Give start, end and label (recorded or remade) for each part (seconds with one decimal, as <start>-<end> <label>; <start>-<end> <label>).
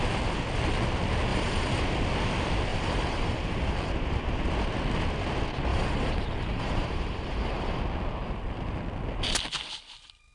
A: 0.0-1.3 recorded; 1.3-1.8 remade; 1.8-2.7 recorded; 2.7-3.9 remade; 3.9-5.7 recorded; 5.7-7.8 remade; 7.8-10.3 recorded